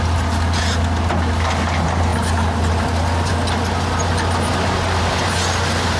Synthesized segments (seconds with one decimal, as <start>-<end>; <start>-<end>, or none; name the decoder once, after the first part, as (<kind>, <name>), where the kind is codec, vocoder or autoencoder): none